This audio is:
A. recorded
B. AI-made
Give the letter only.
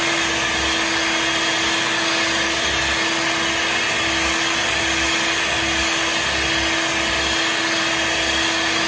A